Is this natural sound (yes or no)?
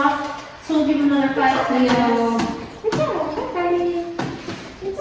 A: yes